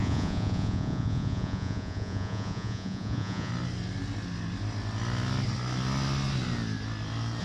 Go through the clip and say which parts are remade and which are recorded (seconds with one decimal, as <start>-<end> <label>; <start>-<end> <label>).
0.0-3.5 remade; 3.5-7.4 recorded